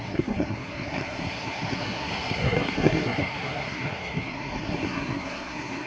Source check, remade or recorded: remade